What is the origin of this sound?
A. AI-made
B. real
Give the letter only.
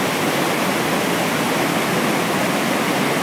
B